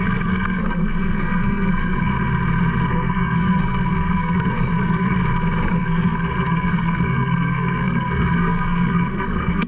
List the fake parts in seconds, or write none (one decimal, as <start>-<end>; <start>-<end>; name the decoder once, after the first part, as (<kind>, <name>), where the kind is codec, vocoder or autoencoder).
0.0-2.1 (codec, SNAC); 2.9-5.2; 5.7-9.7